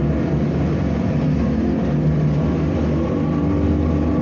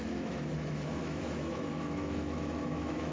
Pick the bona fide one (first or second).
first